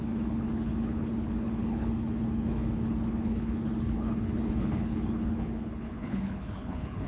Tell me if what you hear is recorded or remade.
remade